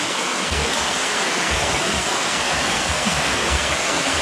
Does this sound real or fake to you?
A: fake